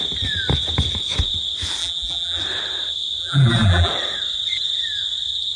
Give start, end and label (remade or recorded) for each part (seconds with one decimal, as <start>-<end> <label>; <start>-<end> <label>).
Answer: 0.0-1.8 recorded; 1.8-2.4 remade; 2.4-3.2 recorded; 3.2-3.9 remade; 3.9-5.6 recorded